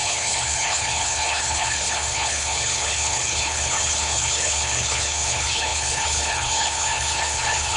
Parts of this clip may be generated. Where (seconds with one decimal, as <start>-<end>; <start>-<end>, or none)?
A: 0.0-7.8